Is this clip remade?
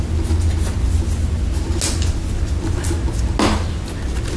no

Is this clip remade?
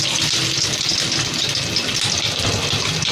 no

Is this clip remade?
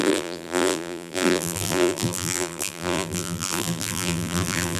yes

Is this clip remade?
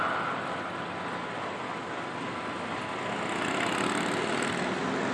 no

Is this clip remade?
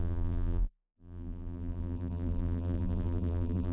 yes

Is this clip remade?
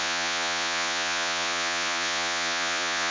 yes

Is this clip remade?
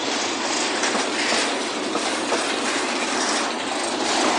no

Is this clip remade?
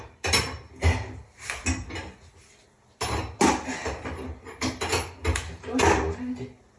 no